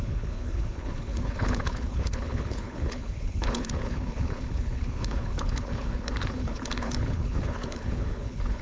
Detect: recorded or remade remade